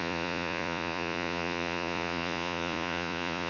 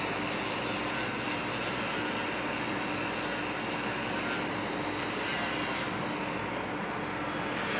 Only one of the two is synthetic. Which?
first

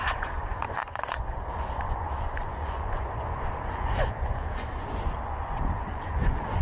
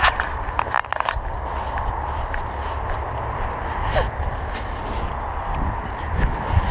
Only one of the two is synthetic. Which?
first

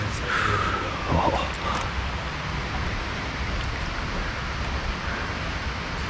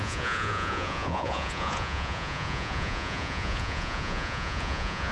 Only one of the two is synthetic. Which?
second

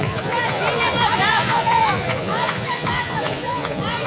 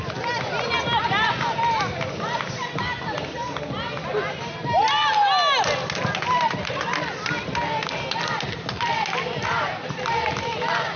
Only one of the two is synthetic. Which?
first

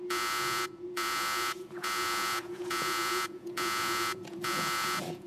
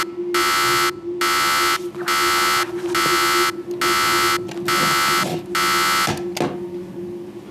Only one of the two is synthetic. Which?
first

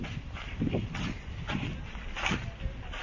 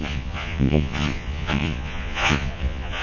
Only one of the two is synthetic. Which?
second